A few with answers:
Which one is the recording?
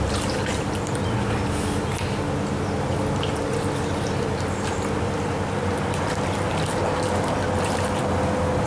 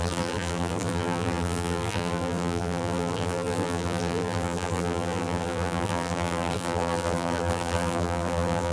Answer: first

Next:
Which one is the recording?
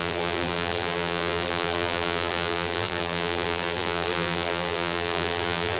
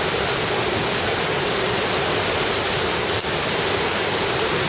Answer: second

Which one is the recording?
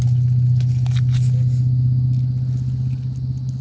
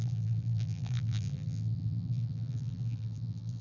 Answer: first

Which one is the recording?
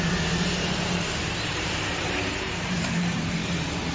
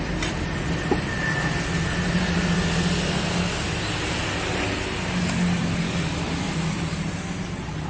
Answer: second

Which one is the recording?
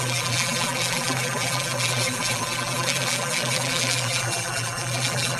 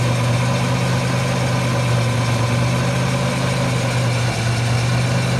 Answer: second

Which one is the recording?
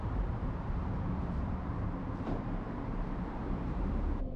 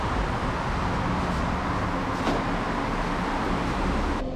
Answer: second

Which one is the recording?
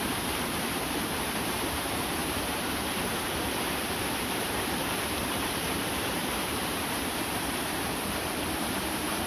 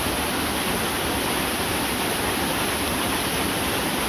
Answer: second